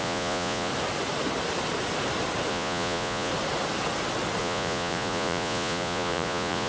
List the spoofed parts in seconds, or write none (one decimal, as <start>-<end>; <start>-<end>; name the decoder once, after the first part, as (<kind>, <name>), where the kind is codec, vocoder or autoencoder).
0.0-0.7 (vocoder, Vocos); 2.5-3.3; 4.4-6.7